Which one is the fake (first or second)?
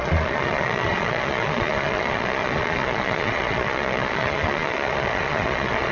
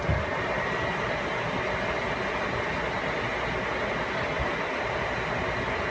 first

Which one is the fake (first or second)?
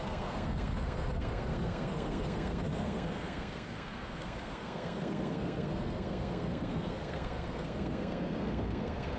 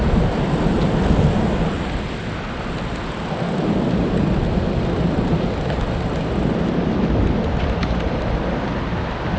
first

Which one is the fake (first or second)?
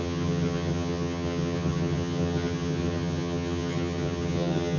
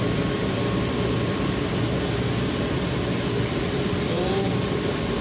first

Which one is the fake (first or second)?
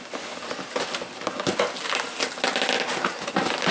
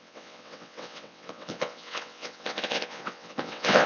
second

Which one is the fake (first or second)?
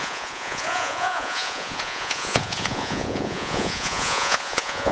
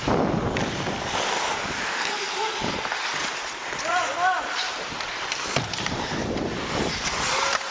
first